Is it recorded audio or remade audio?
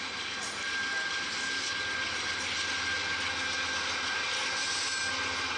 recorded